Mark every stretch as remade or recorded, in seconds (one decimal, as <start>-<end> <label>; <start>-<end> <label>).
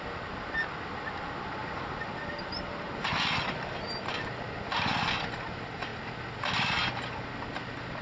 0.0-8.0 recorded